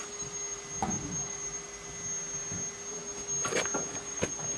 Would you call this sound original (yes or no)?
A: yes